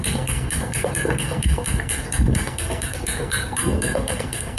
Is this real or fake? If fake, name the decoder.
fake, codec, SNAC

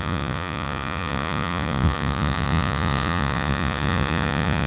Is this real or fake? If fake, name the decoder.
fake, vocoder, Vocos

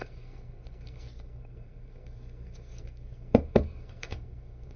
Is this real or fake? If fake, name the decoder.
fake, codec, SNAC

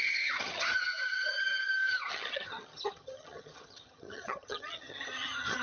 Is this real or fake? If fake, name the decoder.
fake, vocoder, HiFi-GAN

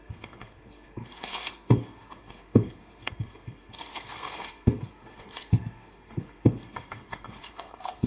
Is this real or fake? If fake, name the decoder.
fake, codec, SNAC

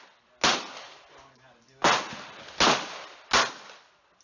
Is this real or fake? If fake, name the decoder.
real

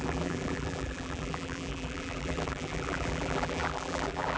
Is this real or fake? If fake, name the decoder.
fake, vocoder, BigVGAN v2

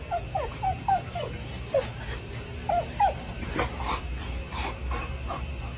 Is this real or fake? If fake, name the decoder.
real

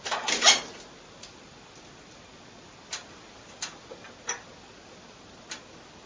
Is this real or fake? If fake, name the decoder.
real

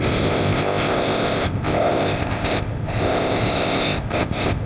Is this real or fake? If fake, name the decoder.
fake, codec, ZipCodec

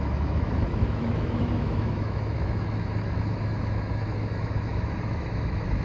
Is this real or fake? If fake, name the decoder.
fake, autoencoder, DAC-VAE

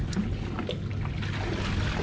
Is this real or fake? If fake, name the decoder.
real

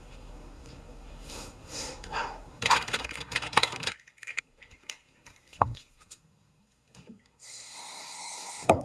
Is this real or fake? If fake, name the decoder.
fake, codec, SNAC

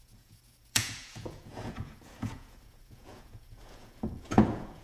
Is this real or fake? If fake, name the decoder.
fake, vocoder, Vocos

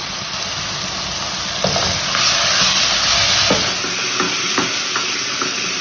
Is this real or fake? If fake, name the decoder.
real